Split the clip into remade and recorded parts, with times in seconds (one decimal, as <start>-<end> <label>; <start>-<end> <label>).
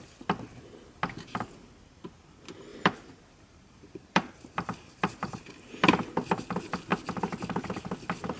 0.0-2.7 recorded; 2.7-5.5 remade; 5.5-8.4 recorded